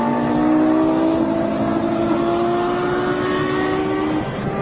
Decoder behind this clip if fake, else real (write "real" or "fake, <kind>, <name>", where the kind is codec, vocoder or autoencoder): real